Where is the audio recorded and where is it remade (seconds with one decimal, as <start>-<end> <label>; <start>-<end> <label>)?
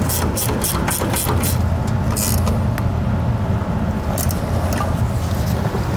0.0-6.0 recorded